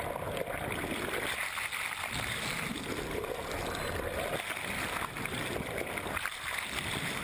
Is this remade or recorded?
recorded